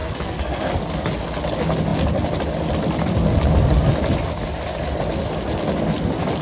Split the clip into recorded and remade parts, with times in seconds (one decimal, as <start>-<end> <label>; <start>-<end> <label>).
0.0-0.7 remade; 0.7-6.4 recorded